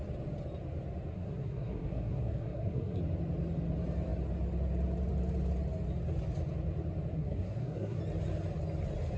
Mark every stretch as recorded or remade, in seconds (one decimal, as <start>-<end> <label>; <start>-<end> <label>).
0.0-1.1 recorded; 1.1-3.0 remade; 3.0-7.1 recorded; 7.1-8.0 remade; 8.0-9.2 recorded